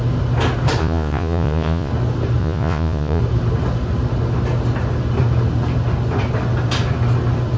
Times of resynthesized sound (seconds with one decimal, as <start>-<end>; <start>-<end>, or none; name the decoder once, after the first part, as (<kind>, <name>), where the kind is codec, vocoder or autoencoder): 0.8-1.9 (vocoder, Vocos); 2.4-3.2